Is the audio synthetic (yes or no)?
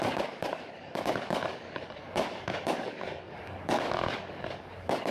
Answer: yes